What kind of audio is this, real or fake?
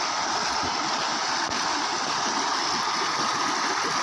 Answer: real